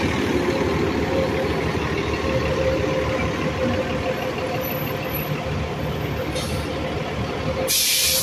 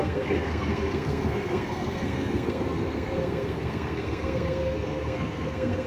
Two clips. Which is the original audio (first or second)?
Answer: first